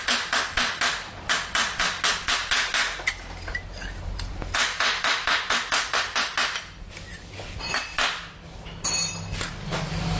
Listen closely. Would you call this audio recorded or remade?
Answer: recorded